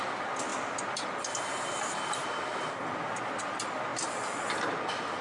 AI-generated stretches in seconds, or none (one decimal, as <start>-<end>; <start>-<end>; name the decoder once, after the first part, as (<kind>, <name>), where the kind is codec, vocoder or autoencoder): 0.0-3.9 (vocoder, BigVGAN v2)